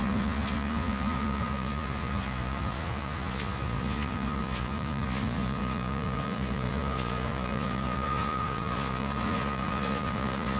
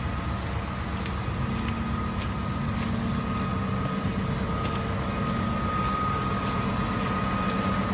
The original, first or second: second